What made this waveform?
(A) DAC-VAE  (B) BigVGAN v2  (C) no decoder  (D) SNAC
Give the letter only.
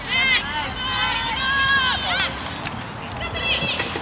C